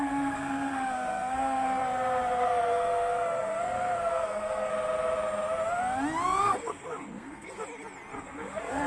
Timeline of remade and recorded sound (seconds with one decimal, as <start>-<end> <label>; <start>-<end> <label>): 0.0-1.8 remade; 1.8-2.4 recorded; 2.4-4.7 remade; 4.7-6.4 recorded; 6.4-7.6 remade; 7.6-8.2 recorded; 8.2-8.9 remade